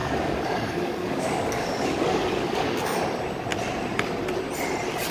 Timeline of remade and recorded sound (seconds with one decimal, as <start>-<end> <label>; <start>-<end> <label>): 0.0-3.0 remade; 3.0-5.1 recorded